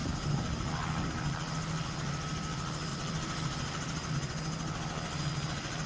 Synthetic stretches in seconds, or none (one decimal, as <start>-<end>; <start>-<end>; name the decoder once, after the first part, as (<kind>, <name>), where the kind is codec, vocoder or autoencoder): 2.9-4.1 (vocoder, BigVGAN v2)